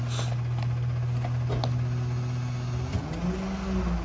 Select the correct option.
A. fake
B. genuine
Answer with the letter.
B